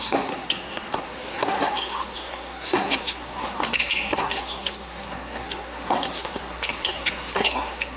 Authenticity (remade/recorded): remade